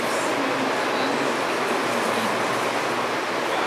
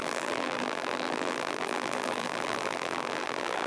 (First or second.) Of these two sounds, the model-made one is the second